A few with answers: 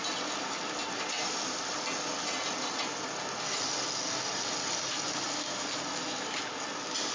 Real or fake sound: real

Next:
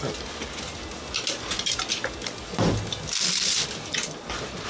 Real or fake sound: real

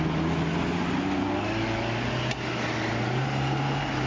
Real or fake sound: real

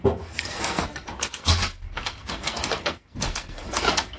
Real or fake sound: fake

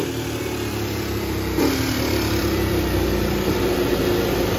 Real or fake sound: fake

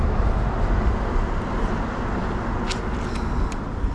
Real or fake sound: real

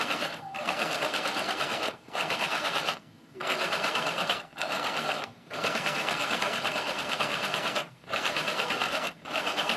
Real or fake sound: fake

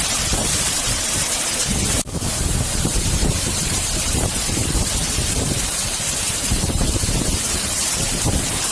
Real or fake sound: fake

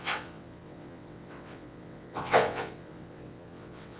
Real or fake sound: fake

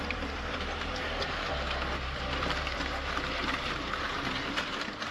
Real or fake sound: fake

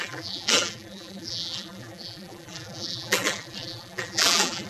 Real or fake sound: fake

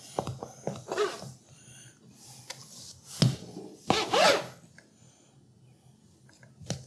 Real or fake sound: real